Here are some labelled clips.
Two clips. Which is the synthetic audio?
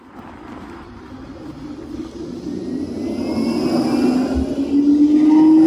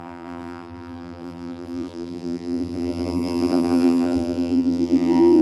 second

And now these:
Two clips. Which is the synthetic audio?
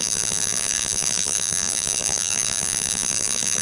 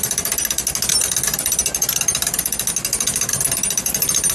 first